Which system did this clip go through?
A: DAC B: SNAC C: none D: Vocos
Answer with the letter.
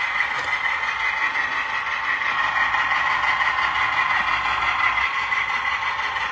C